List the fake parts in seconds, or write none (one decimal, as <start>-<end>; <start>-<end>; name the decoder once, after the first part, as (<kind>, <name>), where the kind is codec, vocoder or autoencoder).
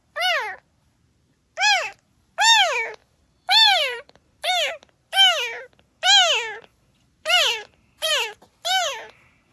3.0-4.5 (vocoder, BigVGAN v2); 6.7-8.1